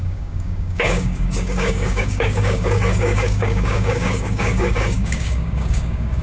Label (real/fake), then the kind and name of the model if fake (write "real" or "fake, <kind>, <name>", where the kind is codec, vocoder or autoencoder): fake, codec, DAC